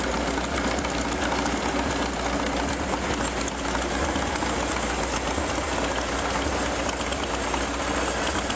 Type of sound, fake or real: real